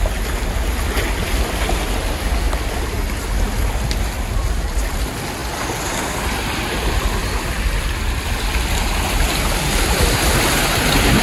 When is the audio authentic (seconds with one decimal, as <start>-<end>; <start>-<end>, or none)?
0.0-11.2